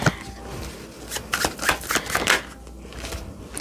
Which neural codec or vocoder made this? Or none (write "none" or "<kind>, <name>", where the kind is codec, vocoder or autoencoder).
none